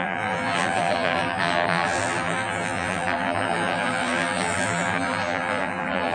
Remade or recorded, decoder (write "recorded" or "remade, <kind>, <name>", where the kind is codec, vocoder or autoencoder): remade, vocoder, BigVGAN v2